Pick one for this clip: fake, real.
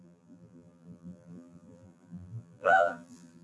fake